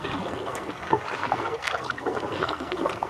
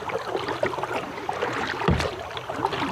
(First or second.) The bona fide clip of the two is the second